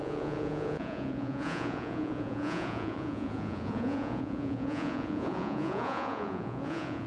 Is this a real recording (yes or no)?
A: no